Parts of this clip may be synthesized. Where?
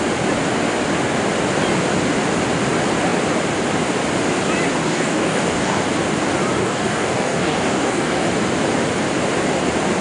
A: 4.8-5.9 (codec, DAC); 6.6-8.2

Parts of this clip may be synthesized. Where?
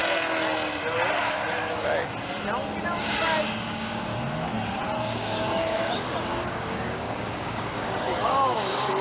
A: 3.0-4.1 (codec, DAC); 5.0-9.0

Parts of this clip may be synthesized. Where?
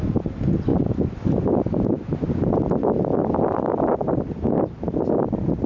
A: none